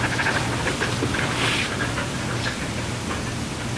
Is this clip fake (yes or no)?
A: no